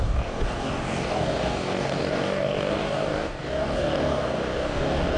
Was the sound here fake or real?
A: fake